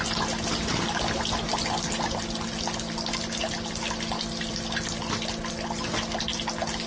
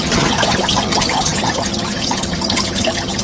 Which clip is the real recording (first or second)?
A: first